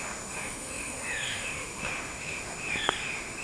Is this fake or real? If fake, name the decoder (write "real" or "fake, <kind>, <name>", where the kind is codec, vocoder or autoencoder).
fake, autoencoder, DAC-VAE